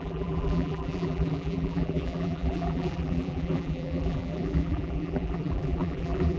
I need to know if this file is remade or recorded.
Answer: remade